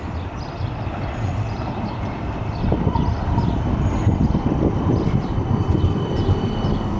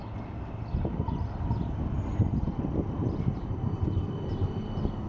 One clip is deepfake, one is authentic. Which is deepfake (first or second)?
first